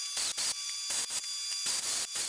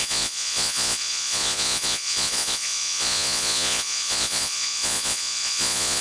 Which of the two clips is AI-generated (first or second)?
second